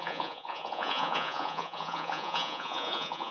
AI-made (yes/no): yes